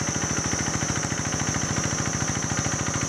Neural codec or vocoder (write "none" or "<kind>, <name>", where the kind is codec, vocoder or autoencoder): none